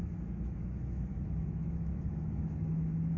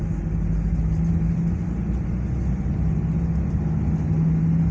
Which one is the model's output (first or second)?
first